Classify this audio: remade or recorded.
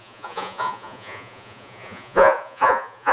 remade